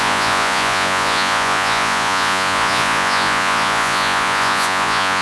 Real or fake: fake